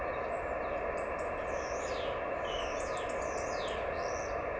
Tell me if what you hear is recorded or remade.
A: recorded